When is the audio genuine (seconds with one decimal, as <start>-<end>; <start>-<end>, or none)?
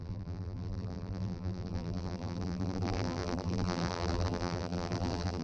none